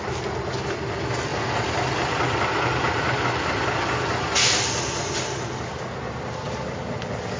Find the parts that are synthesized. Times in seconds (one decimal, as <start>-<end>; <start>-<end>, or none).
none